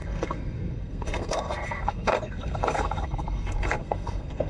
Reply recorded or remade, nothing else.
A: remade